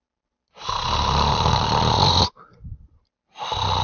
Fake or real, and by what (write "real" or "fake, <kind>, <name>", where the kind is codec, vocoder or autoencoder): real